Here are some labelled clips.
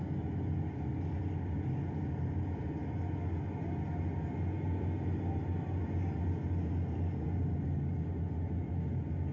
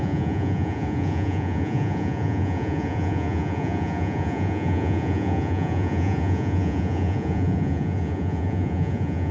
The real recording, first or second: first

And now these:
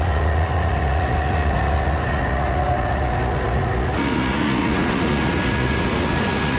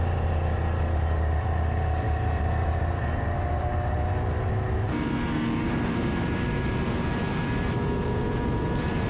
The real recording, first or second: second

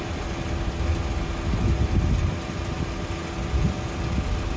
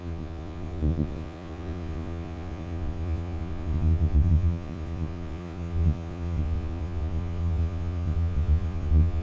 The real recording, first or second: first